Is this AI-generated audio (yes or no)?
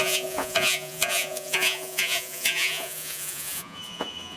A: yes